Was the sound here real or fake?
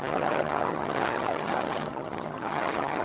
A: fake